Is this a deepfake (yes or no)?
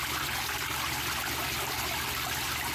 no